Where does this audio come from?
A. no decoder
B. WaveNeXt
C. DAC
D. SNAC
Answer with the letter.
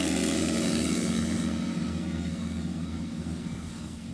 D